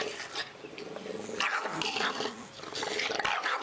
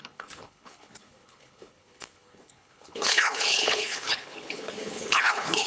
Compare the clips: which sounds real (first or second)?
first